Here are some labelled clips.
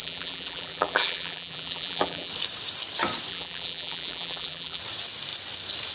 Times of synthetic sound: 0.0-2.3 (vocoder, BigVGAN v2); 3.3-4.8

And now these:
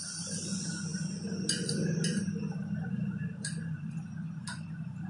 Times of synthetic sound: none

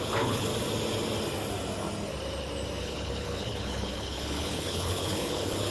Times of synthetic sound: 0.0-0.5 (codec, HILCodec); 2.8-5.7

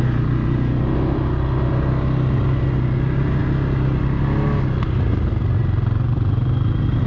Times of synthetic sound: none

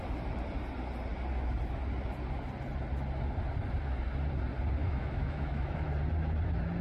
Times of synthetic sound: 4.8-5.9 (autoencoder, DAC-VAE)